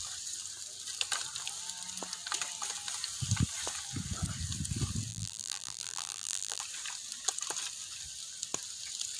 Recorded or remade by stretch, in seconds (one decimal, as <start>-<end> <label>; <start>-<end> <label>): 0.0-5.1 recorded; 5.1-6.6 remade; 6.6-9.2 recorded